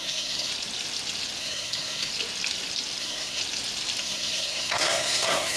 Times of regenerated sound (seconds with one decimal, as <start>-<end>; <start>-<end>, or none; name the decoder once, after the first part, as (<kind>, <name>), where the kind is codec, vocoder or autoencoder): 0.0-0.5 (codec, SNAC); 1.4-2.1; 3.0-3.4; 4.0-5.6